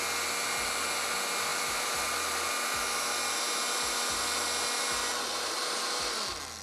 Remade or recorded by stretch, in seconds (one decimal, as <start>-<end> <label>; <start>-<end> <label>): 0.0-1.5 recorded; 1.5-2.0 remade; 2.0-6.6 recorded